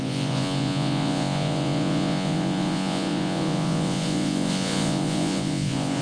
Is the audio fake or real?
fake